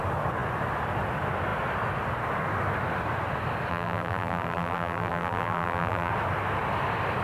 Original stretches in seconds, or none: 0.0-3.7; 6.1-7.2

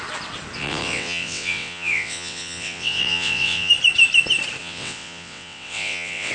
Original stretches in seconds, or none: 0.0-0.6; 3.7-4.6

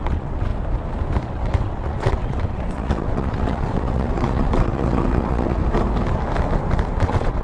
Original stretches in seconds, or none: 0.5-1.3; 5.6-7.0

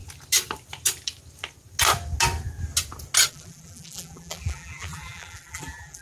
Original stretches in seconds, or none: 0.0-3.3

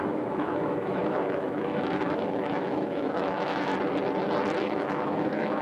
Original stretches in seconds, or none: 3.7-4.6

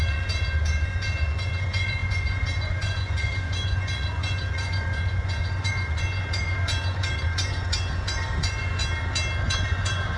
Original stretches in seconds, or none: 8.8-9.4

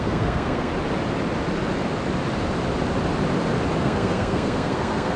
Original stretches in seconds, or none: 0.7-3.8